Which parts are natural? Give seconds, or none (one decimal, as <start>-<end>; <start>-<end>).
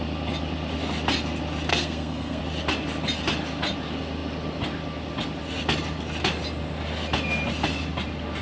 0.0-1.7; 2.4-8.4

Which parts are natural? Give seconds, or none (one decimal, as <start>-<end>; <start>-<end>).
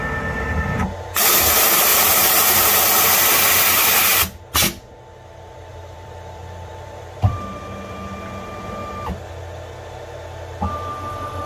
0.0-1.9; 2.7-5.7; 7.5-11.5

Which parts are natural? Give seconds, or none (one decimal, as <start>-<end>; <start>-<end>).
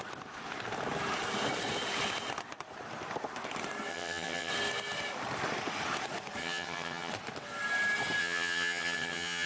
0.0-3.9; 4.5-6.4; 7.1-8.2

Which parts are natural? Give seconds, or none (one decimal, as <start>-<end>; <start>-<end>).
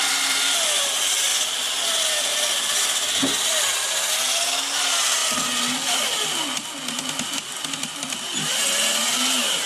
0.0-9.7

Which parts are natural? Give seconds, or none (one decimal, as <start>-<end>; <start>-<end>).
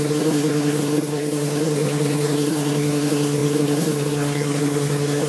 none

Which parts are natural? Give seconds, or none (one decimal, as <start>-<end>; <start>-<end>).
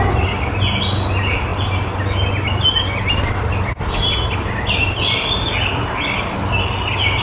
0.0-7.2